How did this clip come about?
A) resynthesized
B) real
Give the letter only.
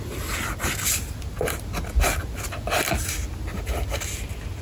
B